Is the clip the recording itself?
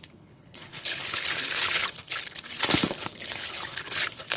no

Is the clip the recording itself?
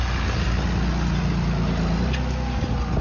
yes